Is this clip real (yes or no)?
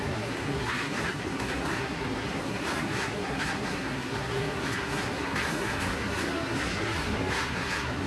no